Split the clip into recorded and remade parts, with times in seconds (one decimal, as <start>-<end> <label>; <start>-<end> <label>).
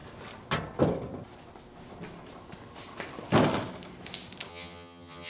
0.0-4.5 recorded; 4.5-5.3 remade